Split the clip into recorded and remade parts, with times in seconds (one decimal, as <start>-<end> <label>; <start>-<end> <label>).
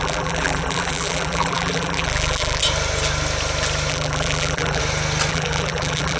0.0-2.6 remade; 2.6-3.9 recorded; 3.9-4.8 remade; 4.8-5.3 recorded; 5.3-6.2 remade